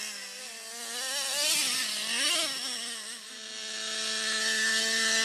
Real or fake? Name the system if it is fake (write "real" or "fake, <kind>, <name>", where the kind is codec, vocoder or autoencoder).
real